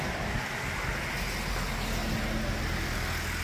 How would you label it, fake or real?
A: real